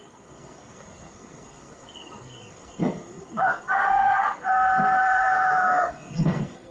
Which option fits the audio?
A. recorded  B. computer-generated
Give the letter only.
B